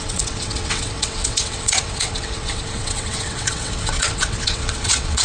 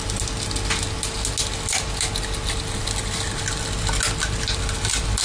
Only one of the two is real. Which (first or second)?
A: second